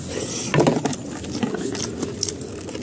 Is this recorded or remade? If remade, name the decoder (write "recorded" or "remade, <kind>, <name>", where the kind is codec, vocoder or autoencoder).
recorded